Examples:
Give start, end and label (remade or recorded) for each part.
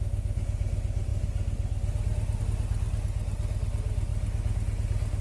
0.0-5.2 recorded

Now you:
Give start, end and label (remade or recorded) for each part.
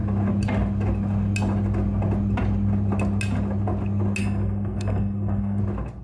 0.0-4.2 recorded; 4.2-5.6 remade; 5.6-6.0 recorded